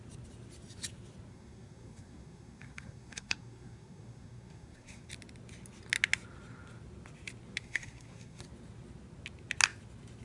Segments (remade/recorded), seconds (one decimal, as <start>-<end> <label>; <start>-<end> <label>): 0.0-1.3 recorded; 1.3-5.1 remade; 5.1-7.6 recorded; 7.6-8.4 remade; 8.4-10.2 recorded